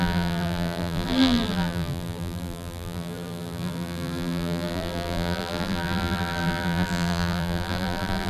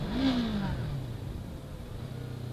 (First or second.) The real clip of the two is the second